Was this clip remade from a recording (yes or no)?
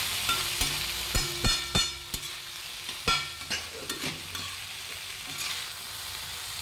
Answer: no